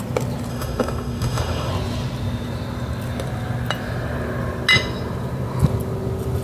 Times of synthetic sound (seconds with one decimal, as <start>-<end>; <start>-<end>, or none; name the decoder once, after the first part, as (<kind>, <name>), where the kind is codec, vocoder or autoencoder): 0.5-1.7 (autoencoder, DAC-VAE)